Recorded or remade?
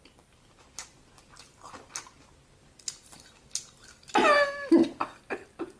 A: recorded